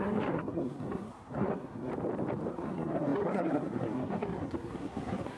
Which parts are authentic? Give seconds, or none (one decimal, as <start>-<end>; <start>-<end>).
1.9-2.5